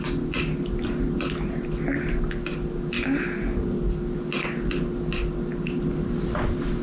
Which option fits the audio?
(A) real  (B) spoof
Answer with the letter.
A